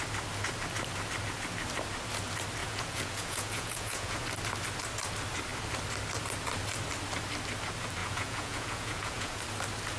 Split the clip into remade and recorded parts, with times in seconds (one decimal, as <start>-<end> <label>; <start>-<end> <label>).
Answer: 0.0-2.6 recorded; 2.6-4.2 remade; 4.2-8.0 recorded; 8.0-9.4 remade; 9.4-10.0 recorded